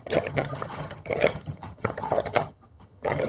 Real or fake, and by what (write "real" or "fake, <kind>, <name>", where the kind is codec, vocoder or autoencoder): fake, vocoder, HiFi-GAN